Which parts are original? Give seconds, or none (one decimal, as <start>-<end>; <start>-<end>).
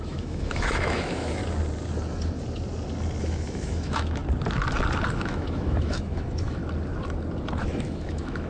1.4-3.2; 4.2-5.1; 6.6-7.6